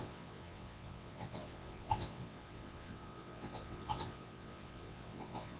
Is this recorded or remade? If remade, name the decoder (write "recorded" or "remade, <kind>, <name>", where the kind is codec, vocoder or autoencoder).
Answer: remade, vocoder, WaveNeXt